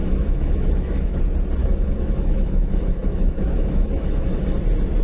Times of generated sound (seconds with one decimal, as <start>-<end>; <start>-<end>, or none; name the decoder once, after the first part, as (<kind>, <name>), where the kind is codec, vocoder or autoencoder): 0.0-1.2 (autoencoder, DAC-VAE); 1.6-4.6